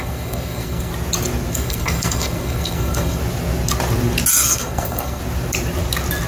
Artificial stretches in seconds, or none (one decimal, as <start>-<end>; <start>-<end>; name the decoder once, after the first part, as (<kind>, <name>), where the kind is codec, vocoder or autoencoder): 0.0-0.9 (codec, SNAC); 1.5-3.2; 4.3-5.2